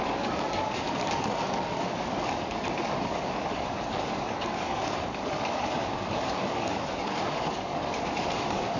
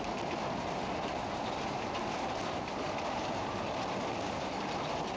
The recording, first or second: second